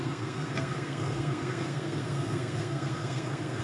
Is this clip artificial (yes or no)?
yes